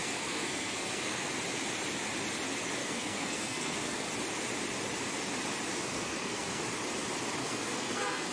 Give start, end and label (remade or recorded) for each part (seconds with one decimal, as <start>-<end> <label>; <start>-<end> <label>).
0.0-1.3 remade; 1.3-2.8 recorded; 2.8-4.1 remade; 4.1-5.7 recorded; 5.7-6.6 remade; 6.6-7.4 recorded; 7.4-8.3 remade